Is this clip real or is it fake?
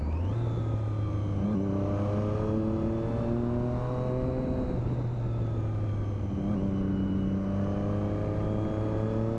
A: real